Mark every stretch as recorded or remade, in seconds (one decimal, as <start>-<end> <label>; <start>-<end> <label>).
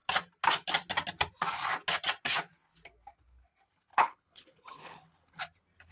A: 0.0-3.9 recorded; 3.9-5.4 remade; 5.4-5.9 recorded